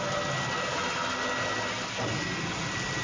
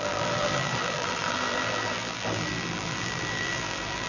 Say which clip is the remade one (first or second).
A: second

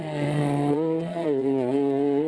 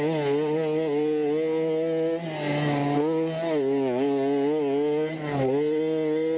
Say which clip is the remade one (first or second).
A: first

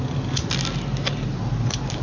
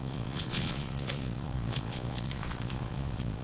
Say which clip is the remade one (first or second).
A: second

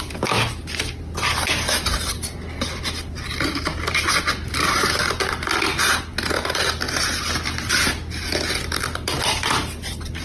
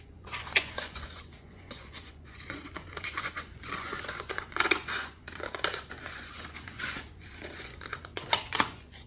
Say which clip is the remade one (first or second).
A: second